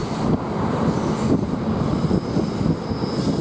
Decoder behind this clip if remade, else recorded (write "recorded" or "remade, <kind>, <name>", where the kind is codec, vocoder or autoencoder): recorded